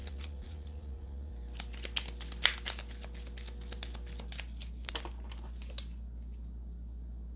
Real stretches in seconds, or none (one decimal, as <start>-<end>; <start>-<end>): 1.3-7.4